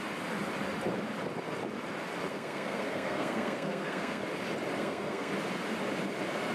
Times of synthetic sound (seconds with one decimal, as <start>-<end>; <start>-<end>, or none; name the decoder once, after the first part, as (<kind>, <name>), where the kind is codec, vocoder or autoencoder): 2.3-4.2 (codec, SNAC); 4.8-5.3